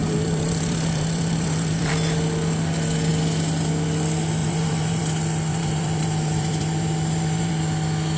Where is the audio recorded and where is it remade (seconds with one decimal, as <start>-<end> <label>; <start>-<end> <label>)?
0.0-1.9 remade; 1.9-4.4 recorded; 4.4-5.0 remade; 5.0-5.5 recorded; 5.5-7.5 remade; 7.5-8.2 recorded